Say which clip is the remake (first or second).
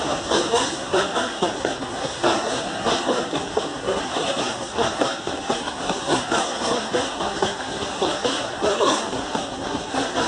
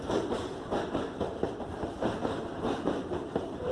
first